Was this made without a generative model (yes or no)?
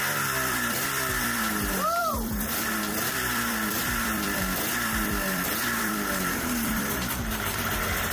no